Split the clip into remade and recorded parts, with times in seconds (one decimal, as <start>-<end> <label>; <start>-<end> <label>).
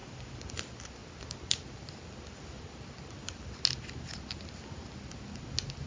0.0-0.5 remade; 0.5-5.9 recorded